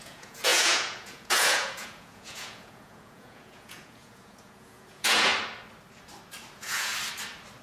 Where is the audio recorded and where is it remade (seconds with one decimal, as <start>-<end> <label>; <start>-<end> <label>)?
0.0-5.3 remade; 5.3-6.5 recorded; 6.5-6.9 remade; 6.9-7.6 recorded

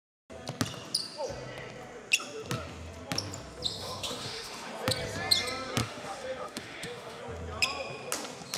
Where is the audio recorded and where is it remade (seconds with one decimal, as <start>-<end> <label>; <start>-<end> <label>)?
0.0-3.8 recorded; 3.8-4.7 remade; 4.7-5.8 recorded; 5.8-7.2 remade; 7.2-8.6 recorded

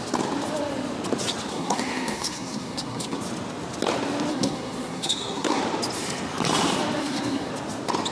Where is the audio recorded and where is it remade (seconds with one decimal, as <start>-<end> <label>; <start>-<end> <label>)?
0.0-1.5 recorded; 1.5-3.2 remade; 3.2-4.3 recorded; 4.3-5.6 remade; 5.6-7.0 recorded; 7.0-7.5 remade; 7.5-8.1 recorded

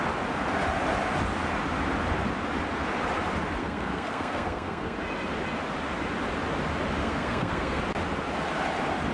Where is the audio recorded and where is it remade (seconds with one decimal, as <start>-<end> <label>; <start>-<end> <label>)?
0.0-3.6 recorded; 3.6-5.0 remade; 5.0-7.0 recorded; 7.0-7.8 remade; 7.8-9.1 recorded

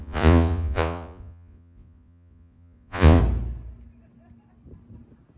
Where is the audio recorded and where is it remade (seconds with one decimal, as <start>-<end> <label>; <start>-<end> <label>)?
0.0-3.2 remade; 3.2-5.4 recorded

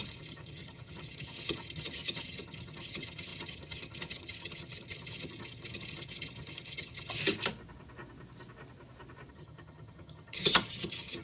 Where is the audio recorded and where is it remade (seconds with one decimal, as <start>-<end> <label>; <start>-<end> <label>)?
0.0-7.2 remade; 7.2-9.3 recorded; 9.3-11.2 remade

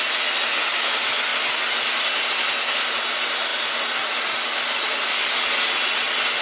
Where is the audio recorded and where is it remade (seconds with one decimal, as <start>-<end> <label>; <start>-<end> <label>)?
0.0-6.4 recorded